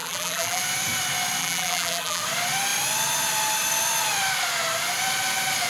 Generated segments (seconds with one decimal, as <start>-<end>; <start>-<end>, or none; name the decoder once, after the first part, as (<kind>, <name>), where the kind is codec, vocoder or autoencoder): 0.0-0.6 (vocoder, BigVGAN v2); 1.4-2.2